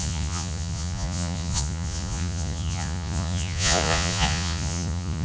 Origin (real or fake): fake